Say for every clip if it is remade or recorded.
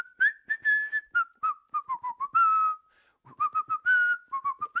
recorded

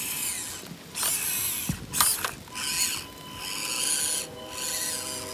recorded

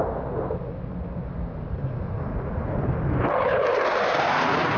recorded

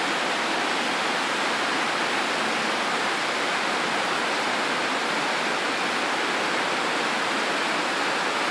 recorded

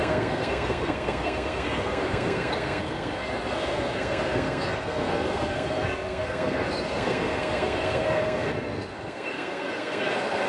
remade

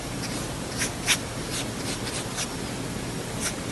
recorded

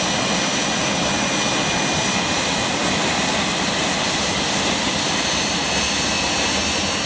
recorded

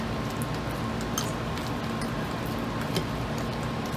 recorded